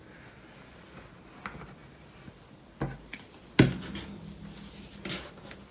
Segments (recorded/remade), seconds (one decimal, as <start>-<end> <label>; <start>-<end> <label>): 0.0-5.7 recorded